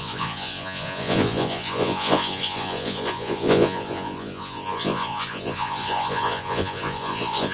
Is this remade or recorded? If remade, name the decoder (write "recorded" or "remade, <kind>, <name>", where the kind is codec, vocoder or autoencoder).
remade, vocoder, Vocos